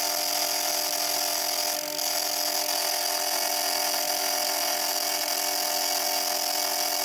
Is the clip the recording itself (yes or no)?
yes